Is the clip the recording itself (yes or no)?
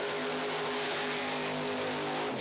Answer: yes